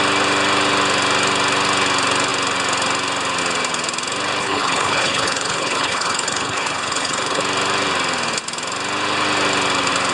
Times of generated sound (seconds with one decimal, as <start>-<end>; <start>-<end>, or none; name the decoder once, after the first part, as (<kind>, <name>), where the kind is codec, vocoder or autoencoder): 4.4-7.4 (codec, HILCodec)